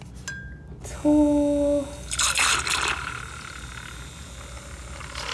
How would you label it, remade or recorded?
recorded